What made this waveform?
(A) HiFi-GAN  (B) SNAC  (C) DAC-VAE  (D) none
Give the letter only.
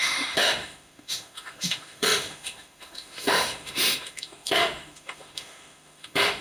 C